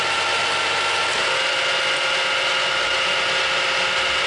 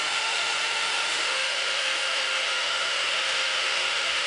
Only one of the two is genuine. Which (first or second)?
first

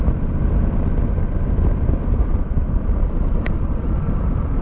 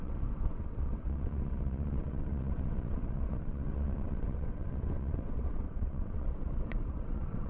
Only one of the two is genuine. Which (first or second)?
first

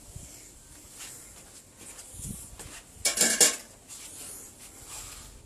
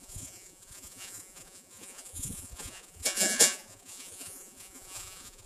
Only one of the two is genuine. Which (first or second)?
first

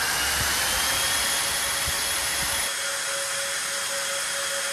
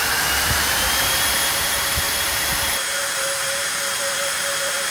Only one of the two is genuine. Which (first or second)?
first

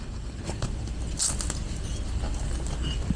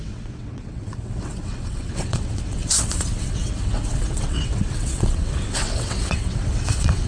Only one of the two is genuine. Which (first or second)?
first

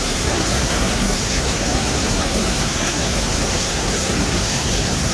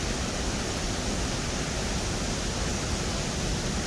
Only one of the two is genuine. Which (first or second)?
second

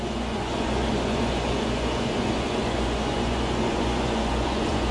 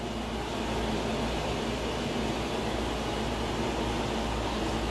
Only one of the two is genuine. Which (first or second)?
second